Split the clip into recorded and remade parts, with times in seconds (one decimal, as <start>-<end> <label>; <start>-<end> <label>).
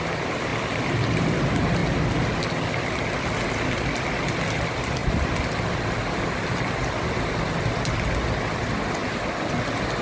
0.0-10.0 recorded